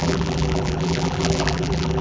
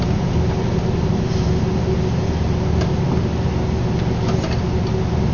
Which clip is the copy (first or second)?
first